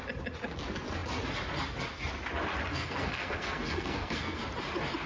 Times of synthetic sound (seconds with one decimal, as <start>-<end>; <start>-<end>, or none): 2.7-4.4